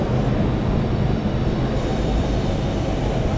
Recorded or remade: recorded